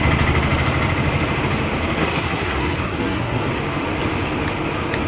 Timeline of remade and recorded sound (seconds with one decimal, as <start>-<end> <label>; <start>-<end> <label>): 0.0-2.0 recorded; 2.0-3.5 remade; 3.5-5.1 recorded